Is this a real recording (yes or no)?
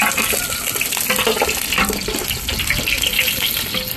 yes